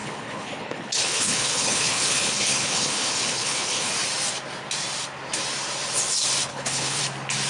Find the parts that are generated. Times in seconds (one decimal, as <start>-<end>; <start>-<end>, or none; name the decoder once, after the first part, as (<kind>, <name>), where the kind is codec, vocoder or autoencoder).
0.0-3.9 (codec, HILCodec); 6.5-7.0